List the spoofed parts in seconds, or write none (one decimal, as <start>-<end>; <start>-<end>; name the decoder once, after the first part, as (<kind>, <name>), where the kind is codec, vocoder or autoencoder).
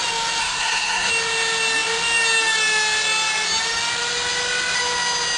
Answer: 0.4-1.1 (codec, SNAC)